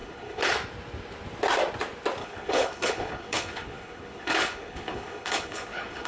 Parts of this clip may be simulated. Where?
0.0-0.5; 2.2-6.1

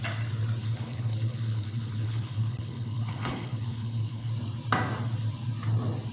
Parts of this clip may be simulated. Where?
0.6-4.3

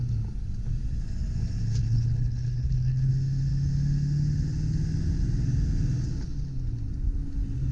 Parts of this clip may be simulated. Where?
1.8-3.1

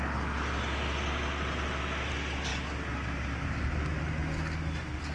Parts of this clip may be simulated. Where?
none